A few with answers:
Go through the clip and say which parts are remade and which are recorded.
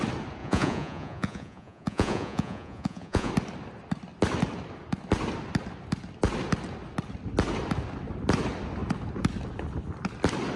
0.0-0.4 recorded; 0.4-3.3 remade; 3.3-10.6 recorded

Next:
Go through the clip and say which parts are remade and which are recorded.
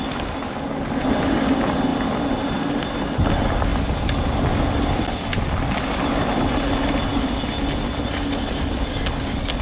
0.0-9.6 recorded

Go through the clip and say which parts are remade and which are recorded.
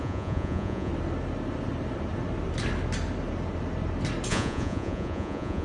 0.0-0.9 remade; 0.9-4.3 recorded; 4.3-5.6 remade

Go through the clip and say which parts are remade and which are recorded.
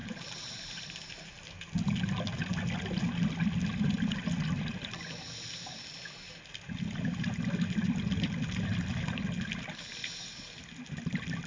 0.0-11.5 recorded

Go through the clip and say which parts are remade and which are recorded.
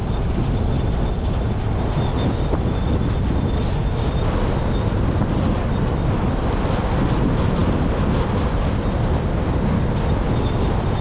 0.0-11.0 recorded